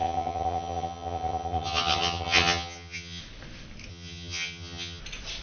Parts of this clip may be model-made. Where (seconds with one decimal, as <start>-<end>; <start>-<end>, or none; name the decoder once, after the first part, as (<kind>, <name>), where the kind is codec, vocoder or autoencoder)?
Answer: 0.0-3.2 (vocoder, HiFi-GAN); 3.9-5.0